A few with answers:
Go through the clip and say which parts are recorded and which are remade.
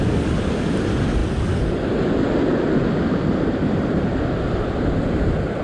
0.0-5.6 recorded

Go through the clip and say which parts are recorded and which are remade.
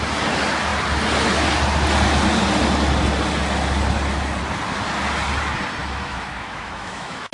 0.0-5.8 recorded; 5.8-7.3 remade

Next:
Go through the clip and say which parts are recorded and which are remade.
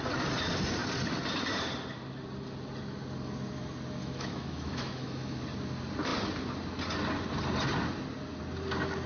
0.0-4.0 recorded; 4.0-5.4 remade; 5.4-9.1 recorded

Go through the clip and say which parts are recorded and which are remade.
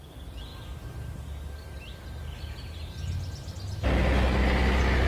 0.0-5.1 recorded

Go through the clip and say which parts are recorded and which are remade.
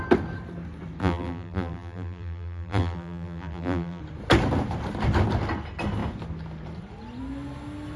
0.0-1.0 recorded; 1.0-4.0 remade; 4.0-8.0 recorded